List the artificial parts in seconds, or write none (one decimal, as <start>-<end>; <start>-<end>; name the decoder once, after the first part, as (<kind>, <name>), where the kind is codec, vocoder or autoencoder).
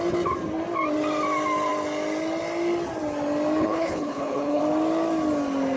3.6-4.6 (codec, HILCodec)